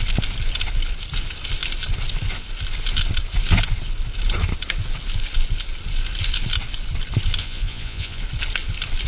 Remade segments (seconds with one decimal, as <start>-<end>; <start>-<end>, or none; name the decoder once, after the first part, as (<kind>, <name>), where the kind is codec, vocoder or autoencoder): 7.4-8.2 (vocoder, Vocos)